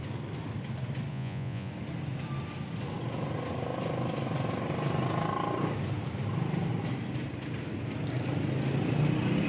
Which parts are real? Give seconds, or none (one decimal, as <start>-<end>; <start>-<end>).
0.0-1.1; 1.7-9.5